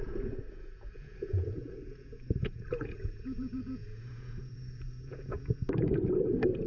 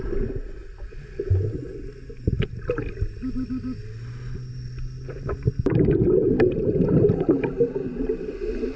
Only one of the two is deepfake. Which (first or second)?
first